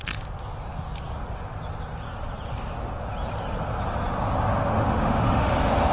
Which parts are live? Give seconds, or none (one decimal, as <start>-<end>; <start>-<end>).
0.0-4.7; 5.5-5.9